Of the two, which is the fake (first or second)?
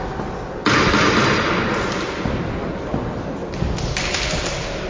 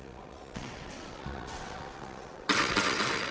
second